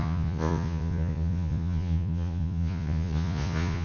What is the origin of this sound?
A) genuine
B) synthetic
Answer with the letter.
B